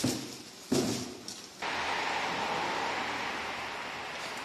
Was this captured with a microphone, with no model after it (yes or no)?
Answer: yes